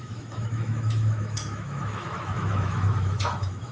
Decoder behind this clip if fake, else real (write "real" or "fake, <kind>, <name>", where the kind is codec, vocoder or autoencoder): fake, autoencoder, DAC-VAE